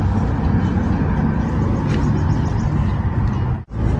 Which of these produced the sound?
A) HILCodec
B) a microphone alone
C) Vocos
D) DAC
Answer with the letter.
B